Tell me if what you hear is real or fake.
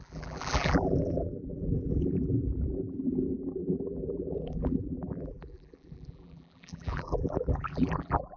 fake